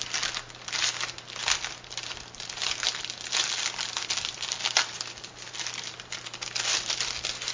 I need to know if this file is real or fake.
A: real